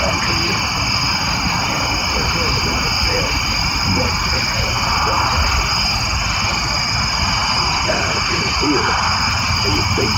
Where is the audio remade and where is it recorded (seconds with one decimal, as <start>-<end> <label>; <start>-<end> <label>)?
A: 0.0-10.2 recorded